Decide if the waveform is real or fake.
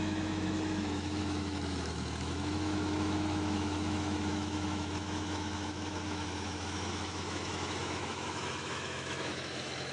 fake